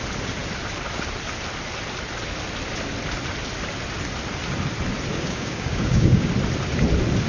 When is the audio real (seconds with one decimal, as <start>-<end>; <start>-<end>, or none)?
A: 0.0-5.1; 6.3-7.3